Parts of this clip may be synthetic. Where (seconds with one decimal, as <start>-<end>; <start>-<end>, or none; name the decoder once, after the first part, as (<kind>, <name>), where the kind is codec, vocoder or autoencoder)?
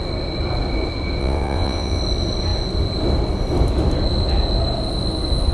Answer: 1.2-2.0 (vocoder, WaveNeXt)